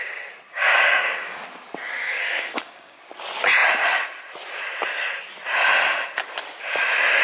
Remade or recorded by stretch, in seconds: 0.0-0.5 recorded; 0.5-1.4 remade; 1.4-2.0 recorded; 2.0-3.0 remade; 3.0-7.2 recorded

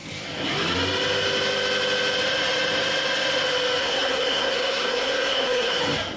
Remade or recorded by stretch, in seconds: 0.0-3.8 recorded; 3.8-5.8 remade; 5.8-6.2 recorded

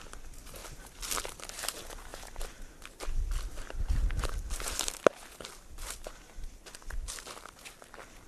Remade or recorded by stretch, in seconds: 0.0-8.3 recorded

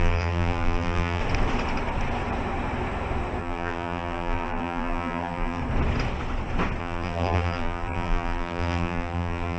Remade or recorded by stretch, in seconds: 0.0-1.2 remade; 1.2-3.4 recorded; 3.4-5.6 remade; 5.6-6.8 recorded; 6.8-9.6 remade